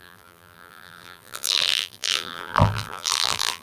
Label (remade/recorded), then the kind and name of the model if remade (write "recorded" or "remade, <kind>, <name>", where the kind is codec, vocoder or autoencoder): remade, vocoder, BigVGAN v2